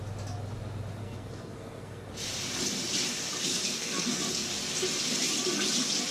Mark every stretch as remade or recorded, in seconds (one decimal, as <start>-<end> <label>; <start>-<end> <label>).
0.0-1.0 recorded; 1.0-2.1 remade; 2.1-3.5 recorded; 3.5-4.2 remade; 4.2-6.1 recorded